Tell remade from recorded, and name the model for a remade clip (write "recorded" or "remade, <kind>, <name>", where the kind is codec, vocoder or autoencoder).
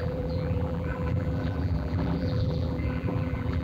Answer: remade, vocoder, BigVGAN v2